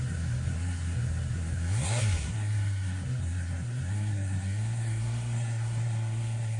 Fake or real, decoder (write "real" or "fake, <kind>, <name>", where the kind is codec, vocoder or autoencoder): fake, codec, SNAC